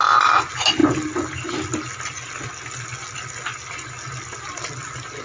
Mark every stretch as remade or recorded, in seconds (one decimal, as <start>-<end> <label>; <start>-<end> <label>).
0.0-5.2 recorded

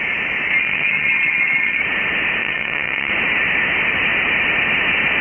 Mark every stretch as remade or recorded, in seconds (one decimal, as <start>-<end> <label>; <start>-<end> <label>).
0.0-0.6 recorded; 0.6-1.8 remade; 1.8-2.4 recorded; 2.4-3.1 remade; 3.1-5.2 recorded

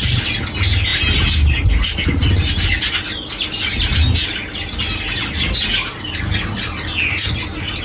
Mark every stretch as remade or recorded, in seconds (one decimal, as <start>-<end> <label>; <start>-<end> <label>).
0.0-7.8 recorded

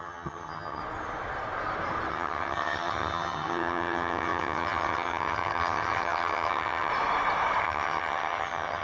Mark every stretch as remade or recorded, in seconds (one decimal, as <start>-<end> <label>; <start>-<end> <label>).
0.0-0.8 remade; 0.8-2.1 recorded; 2.1-6.9 remade; 6.9-7.6 recorded; 7.6-8.8 remade

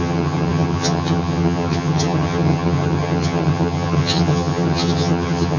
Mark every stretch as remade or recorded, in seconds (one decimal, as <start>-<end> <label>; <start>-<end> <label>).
0.0-5.6 remade

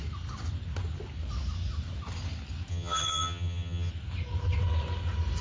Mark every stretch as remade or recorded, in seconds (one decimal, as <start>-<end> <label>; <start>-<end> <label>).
0.0-2.7 recorded; 2.7-3.9 remade; 3.9-5.4 recorded

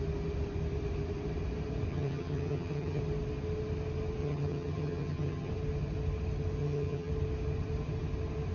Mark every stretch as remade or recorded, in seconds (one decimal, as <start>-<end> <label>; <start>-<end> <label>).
0.0-1.9 recorded; 1.9-3.0 remade; 3.0-4.2 recorded; 4.2-5.5 remade; 5.5-6.6 recorded; 6.6-7.1 remade; 7.1-8.5 recorded

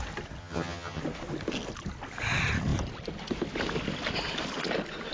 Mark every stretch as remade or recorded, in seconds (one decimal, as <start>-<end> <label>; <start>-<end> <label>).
0.0-0.4 recorded; 0.4-1.0 remade; 1.0-5.1 recorded